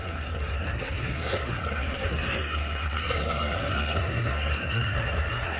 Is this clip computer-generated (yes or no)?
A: yes